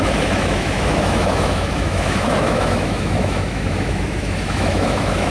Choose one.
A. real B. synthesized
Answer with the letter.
B